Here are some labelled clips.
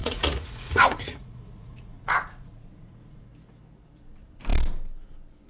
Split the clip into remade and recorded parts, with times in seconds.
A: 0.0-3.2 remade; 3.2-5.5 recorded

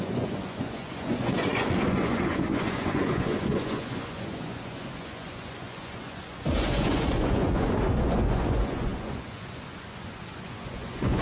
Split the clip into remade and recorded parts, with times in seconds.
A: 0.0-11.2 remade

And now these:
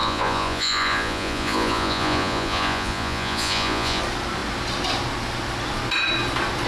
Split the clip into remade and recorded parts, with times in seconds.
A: 0.0-4.0 remade; 4.0-6.7 recorded